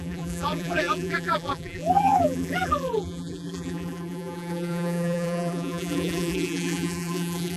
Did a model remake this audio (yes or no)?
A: yes